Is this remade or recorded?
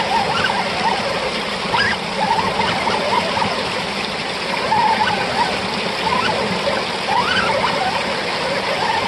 recorded